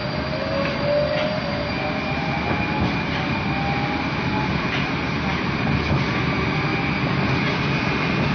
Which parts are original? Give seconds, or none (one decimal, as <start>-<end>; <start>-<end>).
0.0-8.3